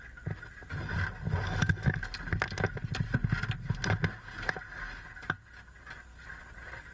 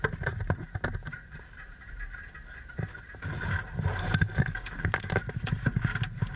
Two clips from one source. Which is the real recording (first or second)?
first